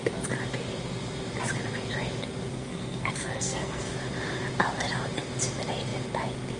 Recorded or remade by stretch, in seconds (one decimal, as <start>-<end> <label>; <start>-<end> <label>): 0.0-2.5 recorded; 2.5-3.9 remade; 3.9-6.6 recorded